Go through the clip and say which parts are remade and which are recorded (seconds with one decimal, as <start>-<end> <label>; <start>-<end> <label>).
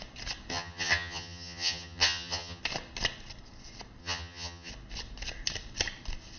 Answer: 0.0-0.5 recorded; 0.5-2.6 remade; 2.6-4.0 recorded; 4.0-4.7 remade; 4.7-6.4 recorded